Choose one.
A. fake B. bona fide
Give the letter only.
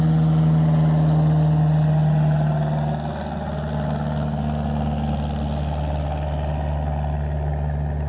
B